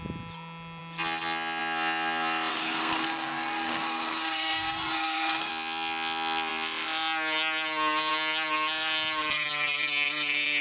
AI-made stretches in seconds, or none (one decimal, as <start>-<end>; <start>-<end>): 2.5-5.5